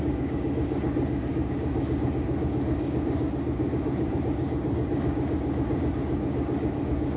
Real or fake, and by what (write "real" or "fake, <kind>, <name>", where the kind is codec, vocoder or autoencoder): fake, codec, DAC